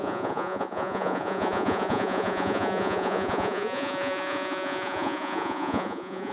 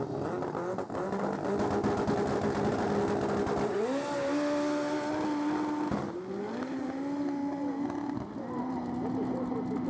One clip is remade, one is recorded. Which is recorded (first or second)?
second